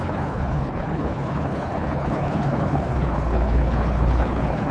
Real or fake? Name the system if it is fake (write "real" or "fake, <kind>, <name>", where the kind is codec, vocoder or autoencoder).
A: fake, codec, HILCodec